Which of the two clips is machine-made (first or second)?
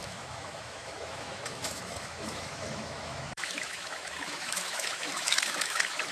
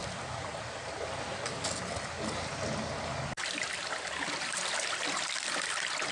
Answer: first